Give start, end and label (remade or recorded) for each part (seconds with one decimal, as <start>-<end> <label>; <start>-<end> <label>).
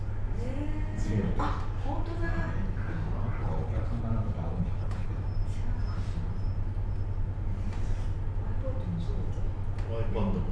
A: 0.0-3.4 recorded; 3.4-4.0 remade; 4.0-4.5 recorded; 4.5-5.1 remade; 5.1-10.5 recorded